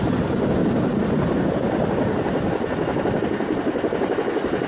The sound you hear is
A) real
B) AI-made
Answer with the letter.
A